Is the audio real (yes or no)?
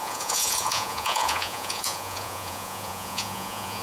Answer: no